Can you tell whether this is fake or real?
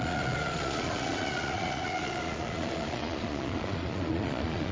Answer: fake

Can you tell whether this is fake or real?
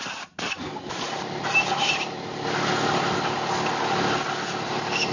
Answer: real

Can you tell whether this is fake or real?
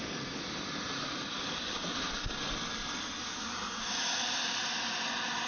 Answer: real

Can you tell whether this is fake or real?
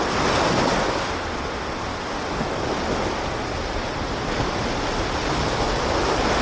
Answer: real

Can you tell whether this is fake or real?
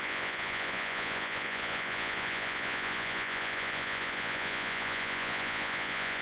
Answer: fake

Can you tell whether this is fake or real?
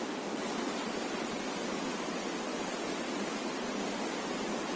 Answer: real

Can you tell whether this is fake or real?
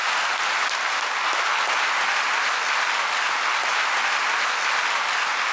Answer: real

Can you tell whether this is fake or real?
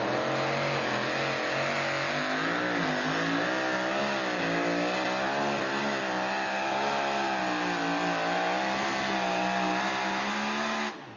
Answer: real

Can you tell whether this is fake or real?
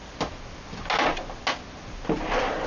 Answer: real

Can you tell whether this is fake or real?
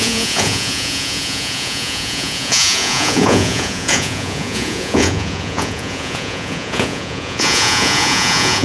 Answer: fake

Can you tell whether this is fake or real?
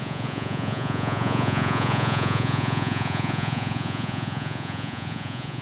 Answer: fake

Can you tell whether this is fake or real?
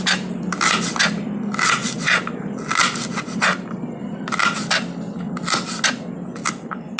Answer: real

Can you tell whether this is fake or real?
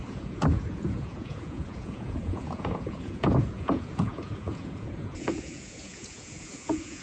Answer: fake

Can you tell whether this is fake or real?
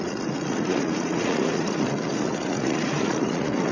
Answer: fake